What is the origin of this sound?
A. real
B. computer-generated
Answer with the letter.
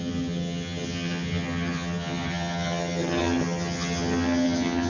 B